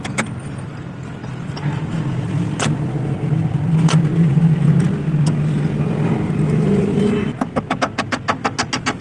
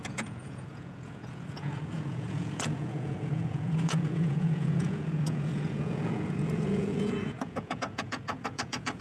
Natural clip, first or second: first